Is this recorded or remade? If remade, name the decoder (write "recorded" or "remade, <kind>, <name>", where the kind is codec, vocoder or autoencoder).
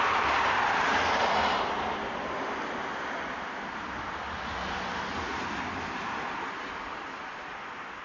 recorded